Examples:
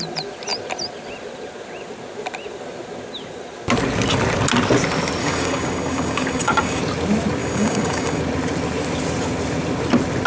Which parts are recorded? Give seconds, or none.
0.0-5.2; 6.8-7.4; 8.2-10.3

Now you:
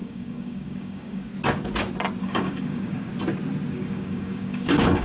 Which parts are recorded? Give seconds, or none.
1.3-2.2; 3.1-3.7

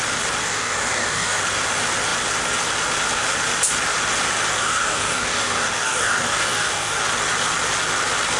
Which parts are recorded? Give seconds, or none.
0.0-0.4; 1.4-4.6; 7.0-8.4

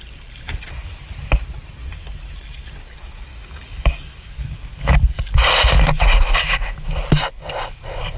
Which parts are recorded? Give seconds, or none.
0.0-3.3; 4.3-8.2

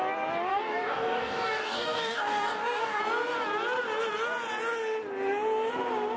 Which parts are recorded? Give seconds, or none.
0.0-0.5; 3.0-6.2

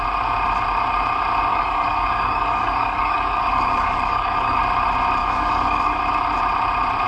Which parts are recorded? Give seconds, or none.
0.0-1.5; 4.6-5.2; 6.0-7.1

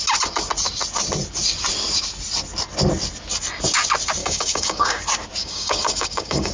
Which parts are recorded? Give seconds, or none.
0.0-4.2; 5.0-5.4